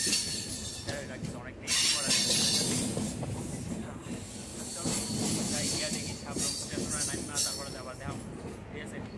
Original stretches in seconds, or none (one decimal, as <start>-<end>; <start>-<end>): 0.0-9.2